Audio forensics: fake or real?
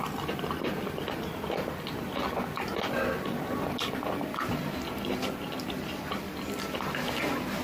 real